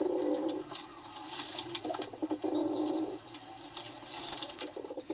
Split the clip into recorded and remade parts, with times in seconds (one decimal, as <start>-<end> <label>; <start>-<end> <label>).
0.0-5.1 recorded